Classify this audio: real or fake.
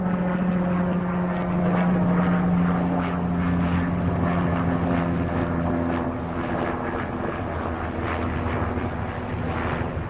real